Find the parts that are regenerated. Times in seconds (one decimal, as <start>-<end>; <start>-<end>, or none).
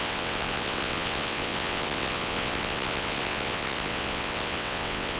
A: 0.0-5.2